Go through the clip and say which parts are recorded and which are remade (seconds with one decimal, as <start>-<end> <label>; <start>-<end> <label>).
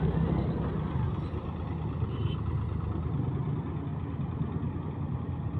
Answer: 0.0-5.6 recorded